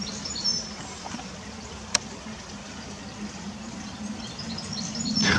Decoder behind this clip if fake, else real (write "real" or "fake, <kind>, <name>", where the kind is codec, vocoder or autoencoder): real